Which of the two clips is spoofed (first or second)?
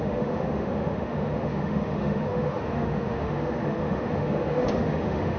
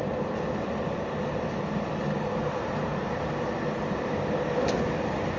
first